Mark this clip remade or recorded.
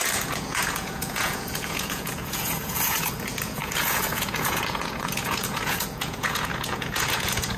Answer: remade